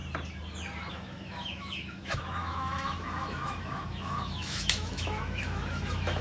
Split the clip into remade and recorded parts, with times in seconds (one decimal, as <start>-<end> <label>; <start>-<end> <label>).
0.0-0.9 recorded; 0.9-6.2 remade